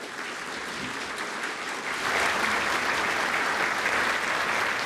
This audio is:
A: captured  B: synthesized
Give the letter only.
A